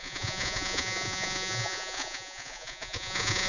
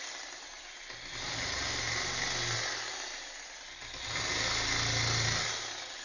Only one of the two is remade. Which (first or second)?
first